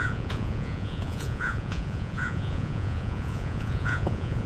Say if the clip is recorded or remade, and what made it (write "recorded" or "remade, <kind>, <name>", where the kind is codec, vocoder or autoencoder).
remade, vocoder, Vocos